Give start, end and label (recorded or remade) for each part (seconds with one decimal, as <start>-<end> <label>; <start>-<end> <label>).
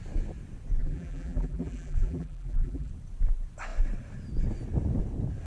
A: 0.0-0.8 recorded; 0.8-2.9 remade; 2.9-5.5 recorded